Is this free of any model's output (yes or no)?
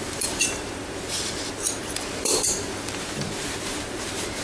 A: no